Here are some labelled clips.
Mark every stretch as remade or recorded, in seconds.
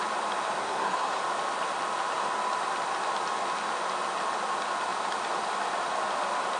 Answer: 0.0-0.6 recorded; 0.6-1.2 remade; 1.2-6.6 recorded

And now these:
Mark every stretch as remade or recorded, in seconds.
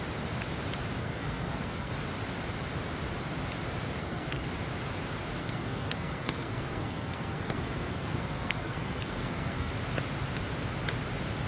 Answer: 0.0-1.0 recorded; 1.0-1.9 remade; 1.9-4.0 recorded; 4.0-4.5 remade; 4.5-5.4 recorded; 5.4-9.7 remade; 9.7-11.5 recorded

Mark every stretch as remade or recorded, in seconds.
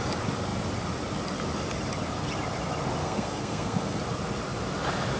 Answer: 0.0-3.0 recorded; 3.0-4.0 remade; 4.0-5.2 recorded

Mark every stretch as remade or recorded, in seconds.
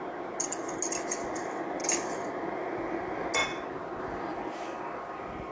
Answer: 0.0-5.5 recorded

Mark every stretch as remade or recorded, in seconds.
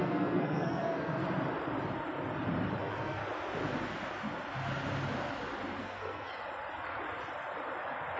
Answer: 0.0-1.2 remade; 1.2-2.8 recorded; 2.8-3.2 remade; 3.2-5.8 recorded; 5.8-6.3 remade; 6.3-8.2 recorded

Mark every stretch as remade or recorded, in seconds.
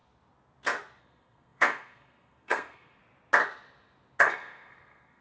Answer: 0.0-1.0 recorded; 1.0-3.0 remade; 3.0-4.2 recorded; 4.2-5.2 remade